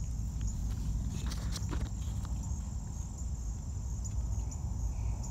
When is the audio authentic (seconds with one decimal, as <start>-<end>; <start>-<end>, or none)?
0.0-5.3